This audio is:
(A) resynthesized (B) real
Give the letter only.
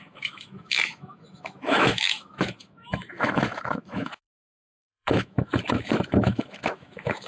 A